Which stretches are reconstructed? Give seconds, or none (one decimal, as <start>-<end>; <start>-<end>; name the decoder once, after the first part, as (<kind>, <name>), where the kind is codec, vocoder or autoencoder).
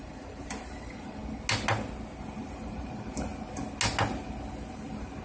0.0-1.2 (vocoder, BigVGAN v2); 2.4-3.3; 4.7-5.2